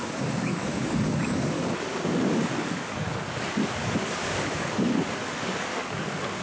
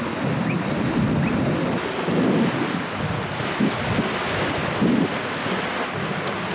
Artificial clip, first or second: first